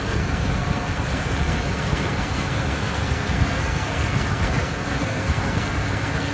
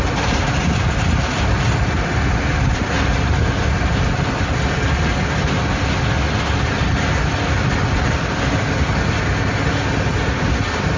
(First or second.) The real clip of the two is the second